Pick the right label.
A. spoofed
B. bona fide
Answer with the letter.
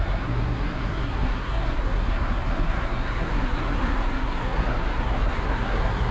A